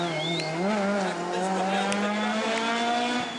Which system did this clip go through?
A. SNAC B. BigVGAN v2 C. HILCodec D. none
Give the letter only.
D